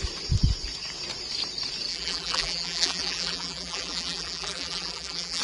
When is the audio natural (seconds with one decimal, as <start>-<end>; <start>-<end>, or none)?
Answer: 0.0-1.9